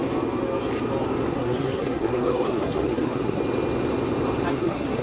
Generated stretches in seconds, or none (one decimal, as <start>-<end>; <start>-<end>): 1.3-3.4; 4.5-5.0